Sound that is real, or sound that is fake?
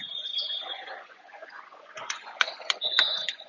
fake